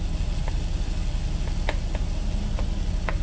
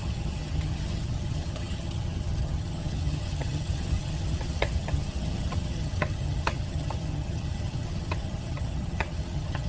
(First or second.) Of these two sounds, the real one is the first